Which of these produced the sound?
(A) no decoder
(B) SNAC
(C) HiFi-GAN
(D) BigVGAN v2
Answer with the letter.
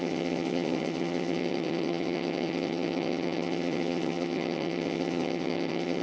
C